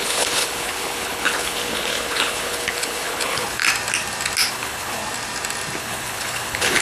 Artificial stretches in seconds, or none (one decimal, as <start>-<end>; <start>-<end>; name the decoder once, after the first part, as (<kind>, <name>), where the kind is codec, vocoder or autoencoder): 0.0-3.6 (codec, HILCodec); 4.5-5.0; 5.8-6.8